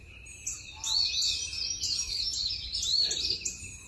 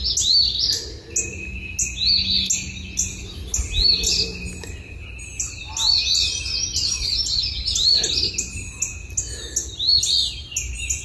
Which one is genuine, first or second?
second